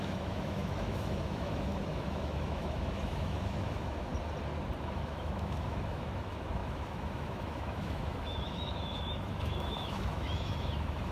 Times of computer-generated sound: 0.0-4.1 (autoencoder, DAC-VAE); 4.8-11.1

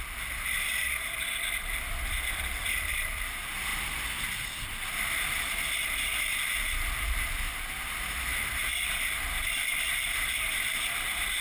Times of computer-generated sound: none

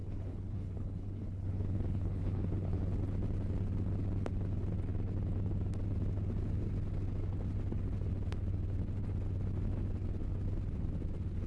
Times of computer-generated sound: 0.0-2.8 (codec, HILCodec)

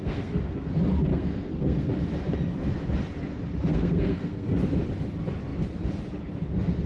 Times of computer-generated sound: 0.0-0.7 (codec, SNAC); 1.1-1.9; 3.7-4.6

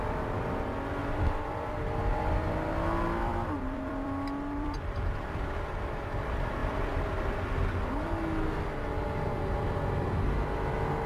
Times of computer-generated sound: 0.0-6.6 (vocoder, BigVGAN v2)